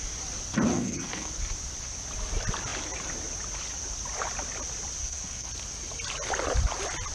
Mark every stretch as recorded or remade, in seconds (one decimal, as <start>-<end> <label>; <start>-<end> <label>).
0.0-0.7 recorded; 0.7-1.3 remade; 1.3-5.0 recorded; 5.0-5.5 remade; 5.5-7.1 recorded